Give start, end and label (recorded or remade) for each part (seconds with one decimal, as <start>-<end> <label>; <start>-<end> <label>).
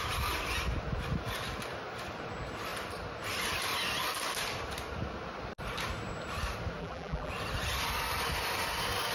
0.0-6.8 recorded; 6.8-7.3 remade; 7.3-9.1 recorded